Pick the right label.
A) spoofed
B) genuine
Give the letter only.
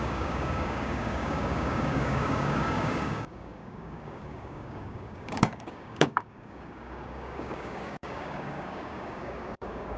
A